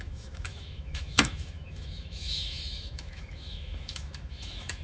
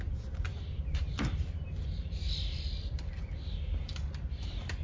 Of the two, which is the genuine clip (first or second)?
second